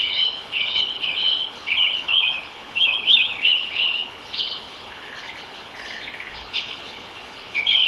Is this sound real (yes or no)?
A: no